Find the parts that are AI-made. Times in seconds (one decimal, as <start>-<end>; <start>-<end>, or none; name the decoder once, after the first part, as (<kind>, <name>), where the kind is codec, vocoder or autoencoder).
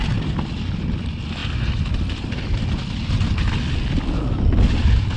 none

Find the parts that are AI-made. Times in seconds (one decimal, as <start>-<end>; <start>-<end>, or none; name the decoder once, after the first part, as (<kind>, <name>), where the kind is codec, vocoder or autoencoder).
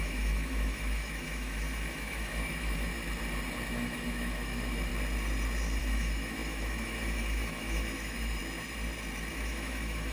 0.0-2.9 (autoencoder, DAC-VAE); 3.7-4.9; 5.8-8.4; 9.3-10.1